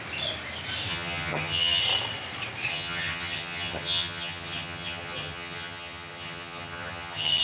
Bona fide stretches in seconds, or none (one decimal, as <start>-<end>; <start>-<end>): 0.0-0.9; 1.8-2.7